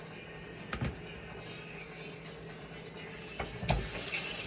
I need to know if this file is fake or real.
real